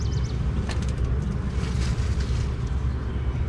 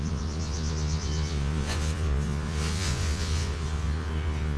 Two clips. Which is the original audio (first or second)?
first